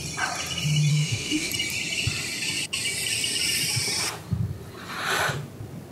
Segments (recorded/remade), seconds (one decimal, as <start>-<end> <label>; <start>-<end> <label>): 0.0-0.9 recorded; 0.9-1.5 remade; 1.5-5.9 recorded